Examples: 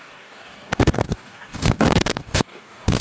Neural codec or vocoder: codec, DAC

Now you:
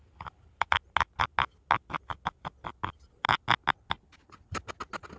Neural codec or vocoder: none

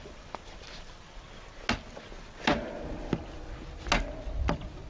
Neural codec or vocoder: none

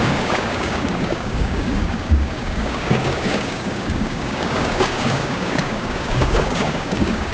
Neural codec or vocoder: codec, DAC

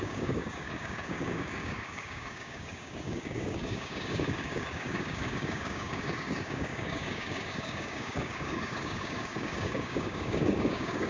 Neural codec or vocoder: codec, DAC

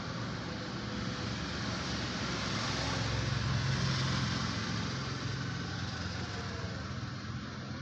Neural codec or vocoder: none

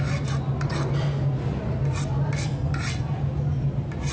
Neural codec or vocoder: none